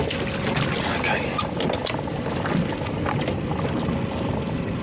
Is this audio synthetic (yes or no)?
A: no